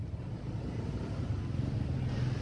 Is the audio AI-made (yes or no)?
no